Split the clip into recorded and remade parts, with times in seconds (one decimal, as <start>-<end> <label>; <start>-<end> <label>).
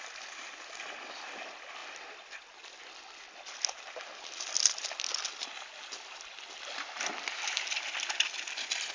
0.0-8.9 recorded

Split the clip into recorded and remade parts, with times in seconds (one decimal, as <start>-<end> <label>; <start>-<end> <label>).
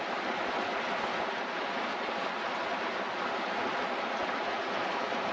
0.0-5.3 recorded